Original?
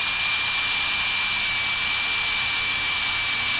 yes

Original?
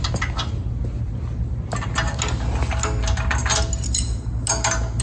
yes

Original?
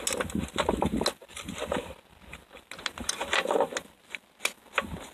yes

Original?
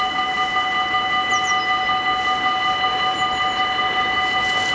yes